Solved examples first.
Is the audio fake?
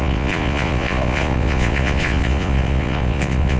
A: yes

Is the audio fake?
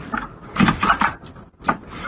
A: yes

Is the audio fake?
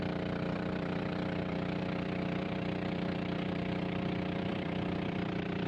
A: yes